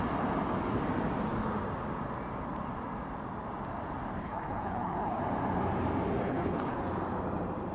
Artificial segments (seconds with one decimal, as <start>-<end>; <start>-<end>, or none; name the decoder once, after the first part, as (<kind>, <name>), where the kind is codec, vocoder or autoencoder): 4.2-5.2 (codec, HILCodec); 6.2-6.8